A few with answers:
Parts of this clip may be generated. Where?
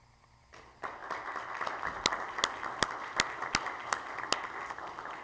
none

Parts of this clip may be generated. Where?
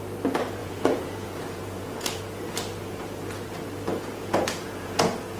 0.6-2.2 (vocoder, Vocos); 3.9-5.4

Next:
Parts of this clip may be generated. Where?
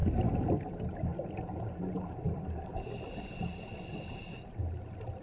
none